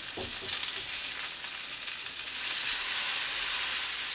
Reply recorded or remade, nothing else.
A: recorded